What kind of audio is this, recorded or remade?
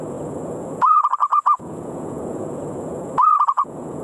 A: remade